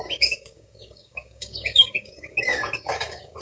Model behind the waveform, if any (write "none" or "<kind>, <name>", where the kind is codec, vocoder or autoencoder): codec, DAC